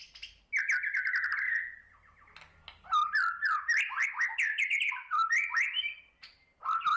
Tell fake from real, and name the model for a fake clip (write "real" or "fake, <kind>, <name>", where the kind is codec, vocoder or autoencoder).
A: real